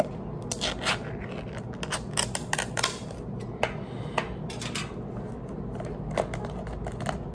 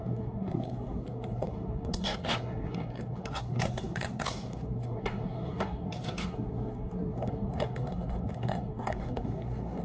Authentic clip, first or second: first